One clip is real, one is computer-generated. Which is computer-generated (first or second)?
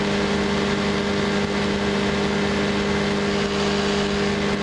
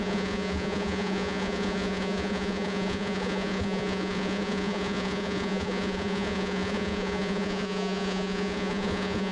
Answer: second